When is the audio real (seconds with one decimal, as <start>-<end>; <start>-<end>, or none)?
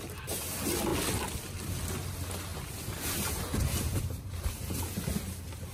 0.0-2.5; 4.8-5.7